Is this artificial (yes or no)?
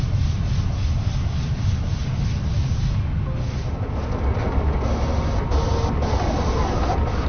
no